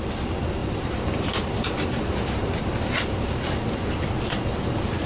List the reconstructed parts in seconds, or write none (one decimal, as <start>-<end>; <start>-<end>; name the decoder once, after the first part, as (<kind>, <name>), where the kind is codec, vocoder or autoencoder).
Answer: 0.6-2.6 (vocoder, BigVGAN v2)